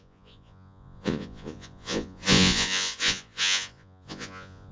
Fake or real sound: fake